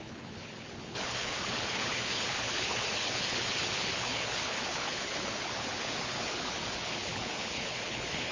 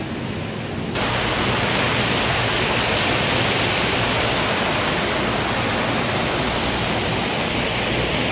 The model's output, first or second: first